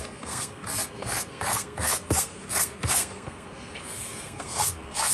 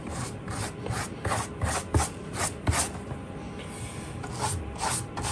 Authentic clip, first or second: second